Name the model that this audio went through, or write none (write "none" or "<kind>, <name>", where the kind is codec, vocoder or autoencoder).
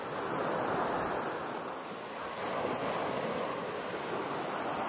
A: none